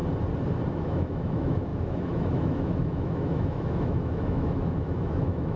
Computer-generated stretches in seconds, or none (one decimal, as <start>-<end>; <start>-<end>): 0.7-5.6